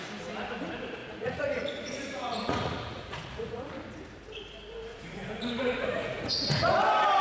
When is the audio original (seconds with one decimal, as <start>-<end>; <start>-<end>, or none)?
0.0-1.0; 3.7-4.9; 6.7-7.2